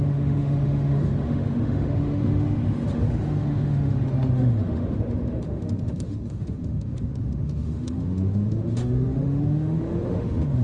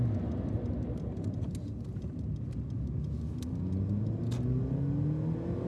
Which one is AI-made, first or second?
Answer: first